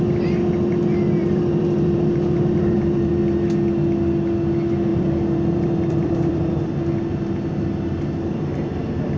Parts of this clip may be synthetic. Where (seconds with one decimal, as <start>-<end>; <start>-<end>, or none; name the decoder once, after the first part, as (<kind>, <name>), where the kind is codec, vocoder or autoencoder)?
1.2-3.1 (vocoder, BigVGAN v2); 4.9-6.7